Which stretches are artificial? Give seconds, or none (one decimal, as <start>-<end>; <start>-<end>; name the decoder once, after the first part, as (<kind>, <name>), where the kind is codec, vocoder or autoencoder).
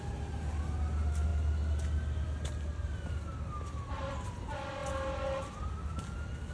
none